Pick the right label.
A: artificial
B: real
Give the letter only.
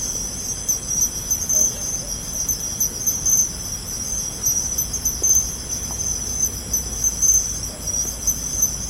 B